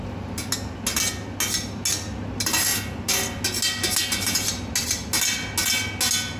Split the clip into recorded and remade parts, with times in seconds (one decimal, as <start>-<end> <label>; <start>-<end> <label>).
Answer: 0.0-6.4 recorded